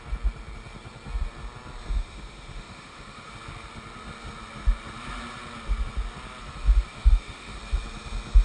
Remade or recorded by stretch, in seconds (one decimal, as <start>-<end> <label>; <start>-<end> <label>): 0.0-2.0 recorded; 2.0-3.3 remade; 3.3-6.9 recorded; 6.9-7.6 remade; 7.6-8.4 recorded